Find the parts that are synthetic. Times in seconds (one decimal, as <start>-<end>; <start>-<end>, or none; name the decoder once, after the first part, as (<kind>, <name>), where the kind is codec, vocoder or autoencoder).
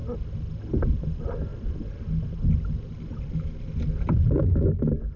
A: none